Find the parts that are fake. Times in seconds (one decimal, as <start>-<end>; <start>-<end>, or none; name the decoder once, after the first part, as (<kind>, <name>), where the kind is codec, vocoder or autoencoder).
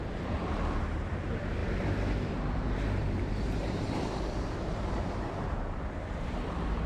0.0-6.9 (vocoder, BigVGAN v2)